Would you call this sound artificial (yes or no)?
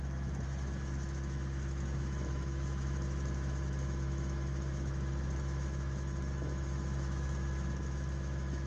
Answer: yes